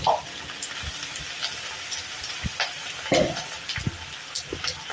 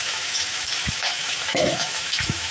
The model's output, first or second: second